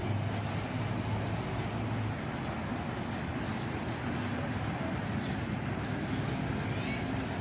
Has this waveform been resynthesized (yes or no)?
no